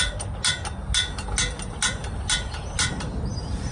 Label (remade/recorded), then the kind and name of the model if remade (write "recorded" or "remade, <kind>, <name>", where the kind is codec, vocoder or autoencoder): recorded